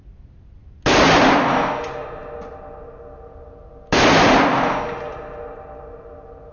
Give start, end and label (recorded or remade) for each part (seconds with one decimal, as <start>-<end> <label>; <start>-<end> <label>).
0.0-6.5 recorded

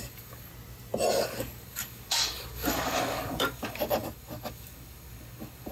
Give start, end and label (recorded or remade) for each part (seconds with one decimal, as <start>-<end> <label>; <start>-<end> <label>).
0.0-0.5 remade; 0.5-1.1 recorded; 1.1-5.7 remade

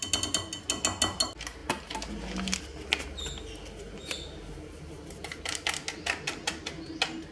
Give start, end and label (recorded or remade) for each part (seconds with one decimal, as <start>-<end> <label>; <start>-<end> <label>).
0.0-7.3 recorded

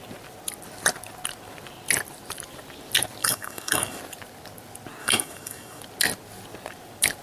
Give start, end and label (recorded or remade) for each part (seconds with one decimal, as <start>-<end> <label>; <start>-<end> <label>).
0.0-3.2 recorded; 3.2-4.0 remade; 4.0-5.0 recorded; 5.0-5.8 remade; 5.8-7.2 recorded

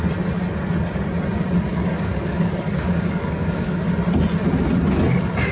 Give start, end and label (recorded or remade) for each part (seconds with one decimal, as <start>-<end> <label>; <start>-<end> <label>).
0.0-1.7 recorded; 1.7-3.9 remade; 3.9-5.5 recorded

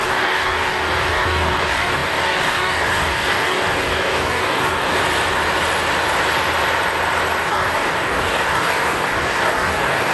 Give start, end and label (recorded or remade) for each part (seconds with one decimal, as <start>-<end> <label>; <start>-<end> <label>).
0.0-5.0 remade; 5.0-7.4 recorded; 7.4-10.1 remade

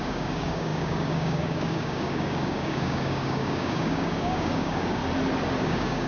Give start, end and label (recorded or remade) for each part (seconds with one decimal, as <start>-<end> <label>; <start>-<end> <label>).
0.0-5.0 remade; 5.0-5.6 recorded; 5.6-6.1 remade